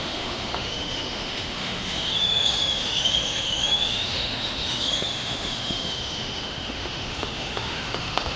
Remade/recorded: remade